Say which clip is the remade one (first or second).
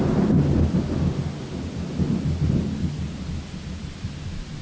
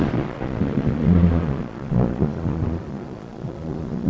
second